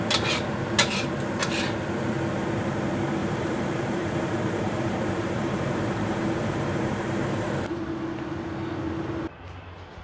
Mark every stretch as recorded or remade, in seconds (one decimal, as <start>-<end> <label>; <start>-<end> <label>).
0.0-3.2 recorded; 3.2-7.8 remade; 7.8-10.0 recorded